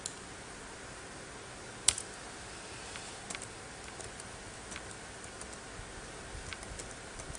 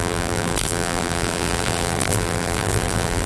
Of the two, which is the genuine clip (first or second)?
first